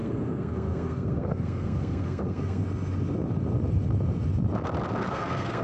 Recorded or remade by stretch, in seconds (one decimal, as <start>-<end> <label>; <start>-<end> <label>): 0.0-2.6 remade; 2.6-5.1 recorded; 5.1-5.6 remade